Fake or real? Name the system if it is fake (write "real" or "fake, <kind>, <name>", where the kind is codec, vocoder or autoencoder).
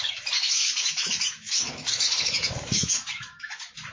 fake, autoencoder, DAC-VAE